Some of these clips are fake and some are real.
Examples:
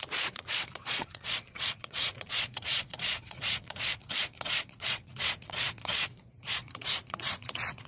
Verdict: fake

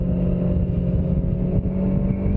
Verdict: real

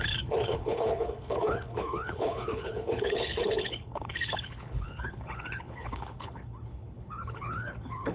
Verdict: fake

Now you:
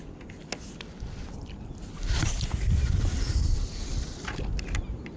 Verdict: real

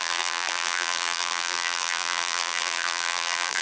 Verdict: fake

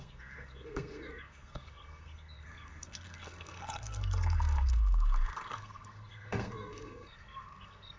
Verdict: fake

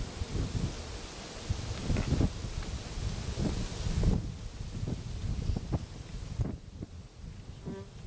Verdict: real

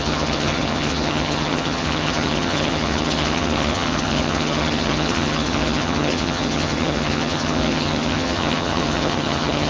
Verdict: fake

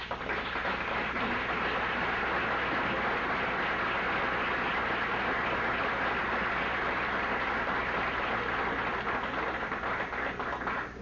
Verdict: real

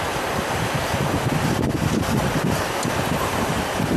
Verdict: real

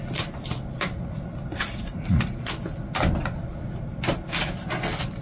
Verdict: real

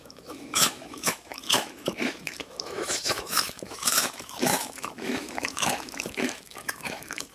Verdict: fake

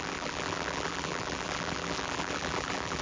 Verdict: fake